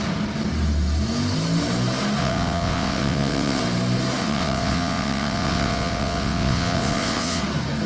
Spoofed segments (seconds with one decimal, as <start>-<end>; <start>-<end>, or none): 2.2-3.6; 4.2-7.4

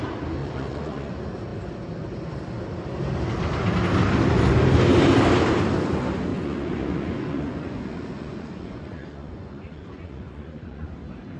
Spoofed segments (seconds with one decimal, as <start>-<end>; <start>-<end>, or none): 0.4-1.1; 6.3-10.9

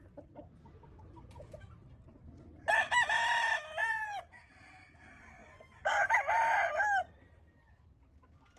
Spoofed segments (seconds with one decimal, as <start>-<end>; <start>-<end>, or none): 3.8-4.7